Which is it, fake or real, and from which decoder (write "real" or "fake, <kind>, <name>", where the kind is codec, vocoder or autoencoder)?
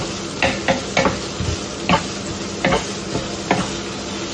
real